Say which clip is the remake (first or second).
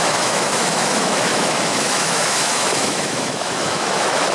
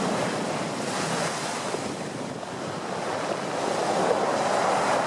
first